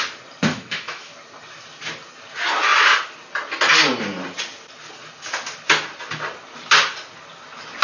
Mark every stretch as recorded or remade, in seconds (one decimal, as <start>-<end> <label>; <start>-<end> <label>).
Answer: 0.0-0.5 recorded; 0.5-1.1 remade; 1.1-7.8 recorded

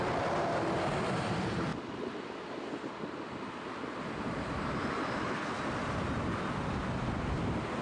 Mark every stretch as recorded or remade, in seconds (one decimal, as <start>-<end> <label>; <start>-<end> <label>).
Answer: 0.0-7.8 recorded

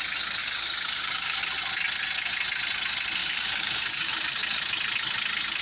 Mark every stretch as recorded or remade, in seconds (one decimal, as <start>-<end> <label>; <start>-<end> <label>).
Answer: 0.0-0.4 recorded; 0.4-1.4 remade; 1.4-3.2 recorded; 3.2-4.1 remade; 4.1-5.6 recorded

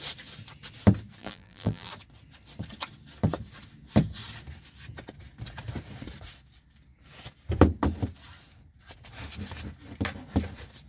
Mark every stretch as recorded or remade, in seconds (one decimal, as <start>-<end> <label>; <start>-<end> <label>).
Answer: 0.0-1.2 recorded; 1.2-1.9 remade; 1.9-10.9 recorded

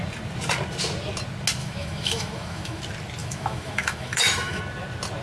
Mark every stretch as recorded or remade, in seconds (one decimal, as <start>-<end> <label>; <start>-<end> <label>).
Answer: 0.0-1.6 recorded; 1.6-2.8 remade; 2.8-3.2 recorded; 3.2-4.6 remade; 4.6-5.2 recorded

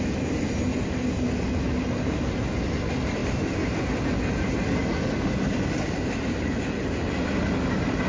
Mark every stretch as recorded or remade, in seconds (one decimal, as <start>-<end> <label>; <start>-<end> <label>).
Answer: 0.0-8.1 recorded

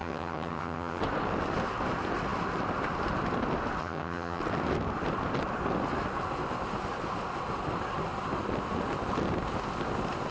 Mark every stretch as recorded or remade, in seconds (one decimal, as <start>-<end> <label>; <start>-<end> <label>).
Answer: 0.0-1.0 remade; 1.0-3.8 recorded; 3.8-4.4 remade; 4.4-10.3 recorded

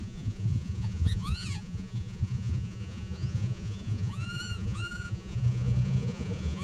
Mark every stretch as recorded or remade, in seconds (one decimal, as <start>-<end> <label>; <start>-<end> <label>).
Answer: 0.0-6.6 remade